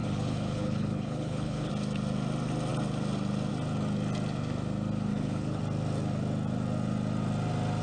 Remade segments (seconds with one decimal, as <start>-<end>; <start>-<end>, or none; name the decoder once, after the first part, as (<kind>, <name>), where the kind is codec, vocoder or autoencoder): 0.0-1.7 (codec, HILCodec); 5.1-5.6